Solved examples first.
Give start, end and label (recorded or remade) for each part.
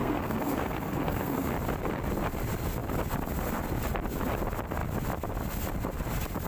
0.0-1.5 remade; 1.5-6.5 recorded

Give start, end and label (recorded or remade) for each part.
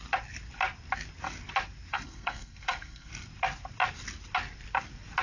0.0-1.9 recorded; 1.9-3.1 remade; 3.1-5.2 recorded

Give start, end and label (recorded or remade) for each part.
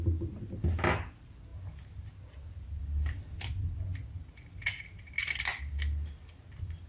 0.0-6.9 recorded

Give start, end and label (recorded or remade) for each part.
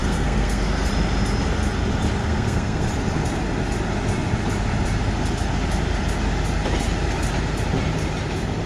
0.0-0.9 remade; 0.9-2.2 recorded; 2.2-2.9 remade; 2.9-8.7 recorded